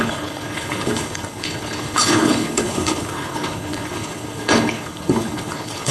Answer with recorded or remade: remade